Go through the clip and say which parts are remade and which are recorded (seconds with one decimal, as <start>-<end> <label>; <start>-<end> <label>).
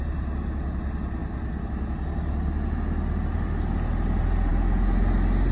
0.0-5.5 recorded